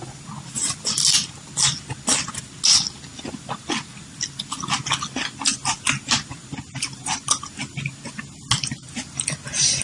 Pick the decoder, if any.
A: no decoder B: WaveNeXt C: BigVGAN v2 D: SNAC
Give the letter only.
A